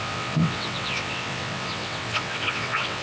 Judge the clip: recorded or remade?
remade